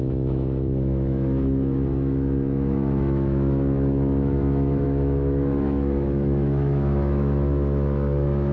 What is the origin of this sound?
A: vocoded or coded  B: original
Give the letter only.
A